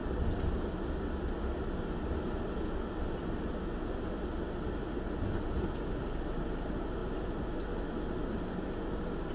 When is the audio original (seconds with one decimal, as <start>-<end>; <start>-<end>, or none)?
0.0-9.3